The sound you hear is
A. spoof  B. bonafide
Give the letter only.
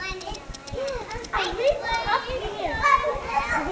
B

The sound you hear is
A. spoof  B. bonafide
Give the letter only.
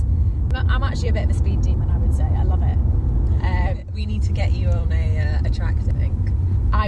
A